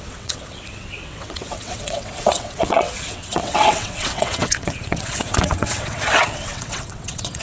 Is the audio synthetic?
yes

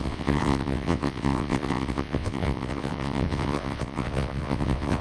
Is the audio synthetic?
yes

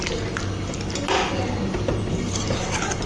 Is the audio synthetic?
no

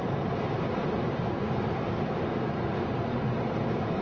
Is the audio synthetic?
no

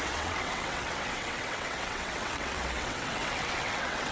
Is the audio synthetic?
yes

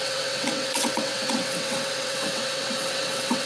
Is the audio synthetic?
yes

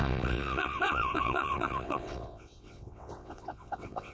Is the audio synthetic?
yes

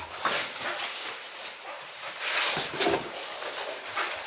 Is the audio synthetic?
no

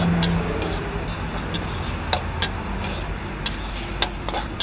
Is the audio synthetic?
no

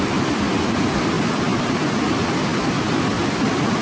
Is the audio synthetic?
no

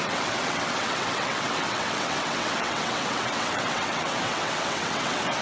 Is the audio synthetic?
yes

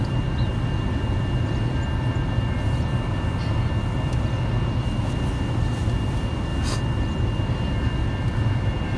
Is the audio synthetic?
no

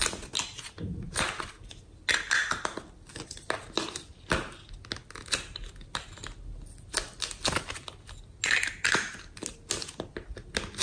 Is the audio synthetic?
no